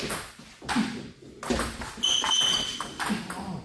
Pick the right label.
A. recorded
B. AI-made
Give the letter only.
A